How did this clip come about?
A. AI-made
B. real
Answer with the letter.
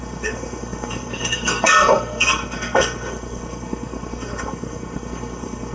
A